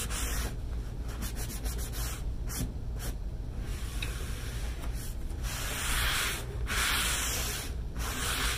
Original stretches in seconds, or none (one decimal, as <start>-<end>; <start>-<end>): 0.0-3.7

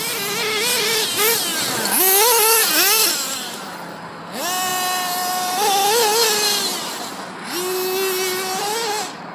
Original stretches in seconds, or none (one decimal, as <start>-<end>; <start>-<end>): 0.0-9.3

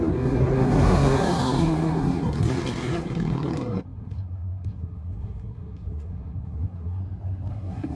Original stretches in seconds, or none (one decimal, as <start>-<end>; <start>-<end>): 7.0-7.5

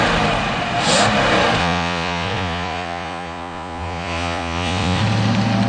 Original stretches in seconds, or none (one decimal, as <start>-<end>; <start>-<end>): 0.0-1.6; 5.0-5.7

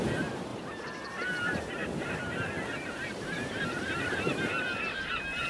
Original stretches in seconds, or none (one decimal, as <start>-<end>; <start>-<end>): 0.0-0.5; 1.3-1.8; 5.1-5.5

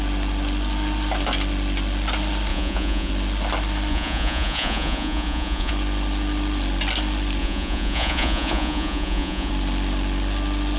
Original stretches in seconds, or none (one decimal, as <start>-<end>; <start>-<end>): 0.0-2.5; 3.1-3.9; 5.7-7.4; 9.5-10.8

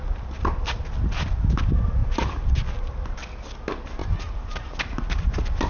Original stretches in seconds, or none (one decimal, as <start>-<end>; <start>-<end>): 0.0-2.0; 2.8-5.7